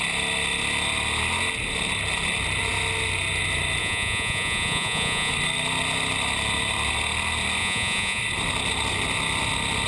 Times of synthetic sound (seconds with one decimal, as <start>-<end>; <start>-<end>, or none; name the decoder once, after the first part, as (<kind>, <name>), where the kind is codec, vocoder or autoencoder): 3.8-5.3 (vocoder, Vocos); 7.6-8.2

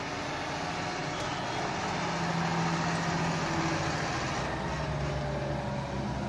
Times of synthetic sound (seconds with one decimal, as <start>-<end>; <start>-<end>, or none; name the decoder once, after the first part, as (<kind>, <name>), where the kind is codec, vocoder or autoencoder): none

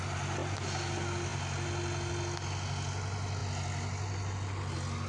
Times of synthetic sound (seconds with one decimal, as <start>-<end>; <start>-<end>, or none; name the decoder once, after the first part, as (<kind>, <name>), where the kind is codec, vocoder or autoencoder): none

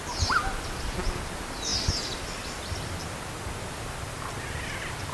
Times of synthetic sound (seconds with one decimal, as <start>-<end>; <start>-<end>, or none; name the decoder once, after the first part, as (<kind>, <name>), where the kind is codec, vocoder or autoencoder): none

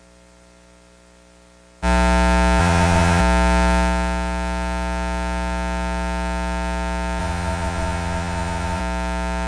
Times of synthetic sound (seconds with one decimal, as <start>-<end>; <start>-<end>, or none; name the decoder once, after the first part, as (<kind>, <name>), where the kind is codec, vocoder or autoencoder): 2.6-3.2 (vocoder, Vocos); 7.2-8.8

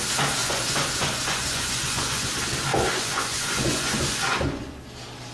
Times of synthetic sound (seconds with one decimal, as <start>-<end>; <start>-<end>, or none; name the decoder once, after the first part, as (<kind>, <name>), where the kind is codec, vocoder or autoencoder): 0.4-2.3 (vocoder, Vocos); 2.7-4.8

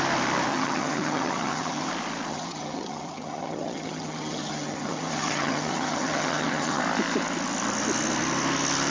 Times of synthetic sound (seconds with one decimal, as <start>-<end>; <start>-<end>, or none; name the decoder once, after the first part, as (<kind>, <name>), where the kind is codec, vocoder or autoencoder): 0.5-1.9 (vocoder, HiFi-GAN); 2.3-6.8